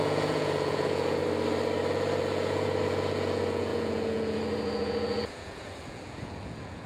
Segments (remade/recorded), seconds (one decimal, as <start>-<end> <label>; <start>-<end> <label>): 0.0-1.2 remade; 1.2-1.9 recorded; 1.9-6.9 remade